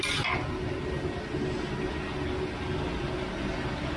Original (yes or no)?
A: yes